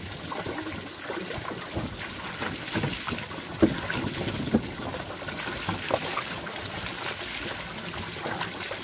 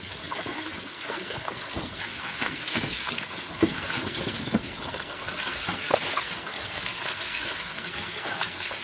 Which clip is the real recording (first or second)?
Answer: first